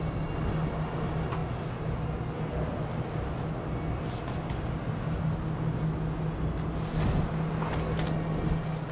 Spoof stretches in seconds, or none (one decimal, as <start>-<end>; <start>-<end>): none